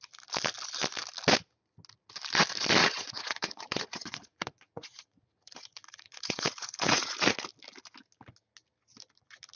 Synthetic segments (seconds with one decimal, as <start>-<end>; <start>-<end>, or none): 2.8-7.4